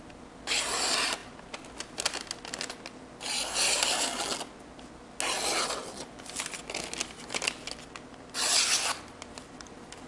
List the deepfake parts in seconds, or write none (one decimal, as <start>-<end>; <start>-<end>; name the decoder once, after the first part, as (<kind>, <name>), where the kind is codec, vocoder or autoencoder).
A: none